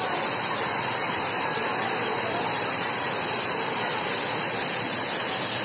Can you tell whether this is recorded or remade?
remade